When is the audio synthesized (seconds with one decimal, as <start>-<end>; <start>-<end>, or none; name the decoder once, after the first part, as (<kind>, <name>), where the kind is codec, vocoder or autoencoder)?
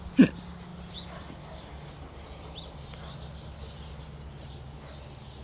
none